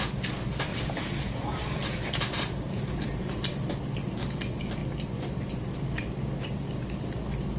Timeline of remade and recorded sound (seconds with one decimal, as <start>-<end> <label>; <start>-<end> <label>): 0.0-0.7 recorded; 0.7-3.4 remade; 3.4-7.6 recorded